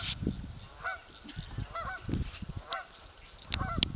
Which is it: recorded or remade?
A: recorded